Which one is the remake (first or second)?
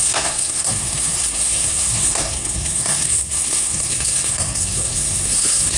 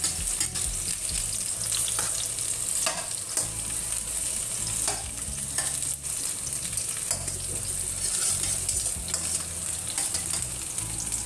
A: first